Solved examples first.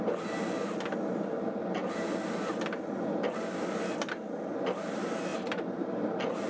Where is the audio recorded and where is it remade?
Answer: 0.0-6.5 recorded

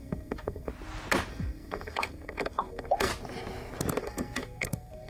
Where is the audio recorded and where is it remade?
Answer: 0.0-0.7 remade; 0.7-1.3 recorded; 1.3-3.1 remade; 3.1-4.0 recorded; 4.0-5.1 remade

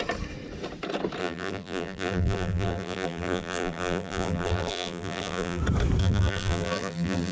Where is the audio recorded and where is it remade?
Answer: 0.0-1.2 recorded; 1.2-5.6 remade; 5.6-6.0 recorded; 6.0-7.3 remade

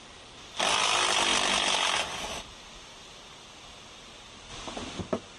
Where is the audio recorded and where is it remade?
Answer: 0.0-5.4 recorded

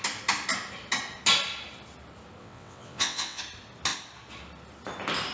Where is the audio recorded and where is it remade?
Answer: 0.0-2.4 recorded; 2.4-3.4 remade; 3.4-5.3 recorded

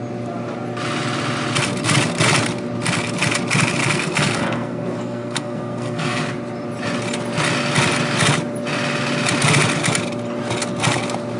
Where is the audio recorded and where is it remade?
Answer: 0.0-3.8 recorded; 3.8-6.2 remade; 6.2-11.4 recorded

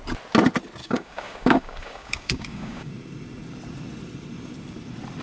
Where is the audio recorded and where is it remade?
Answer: 0.0-0.8 recorded; 0.8-2.9 remade; 2.9-5.2 recorded

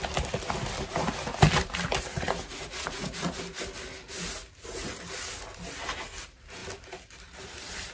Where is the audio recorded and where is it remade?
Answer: 0.0-2.1 recorded; 2.1-3.4 remade; 3.4-7.9 recorded